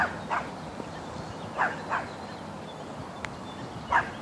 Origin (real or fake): real